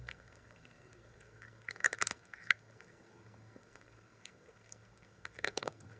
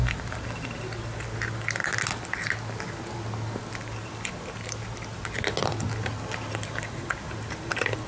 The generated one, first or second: first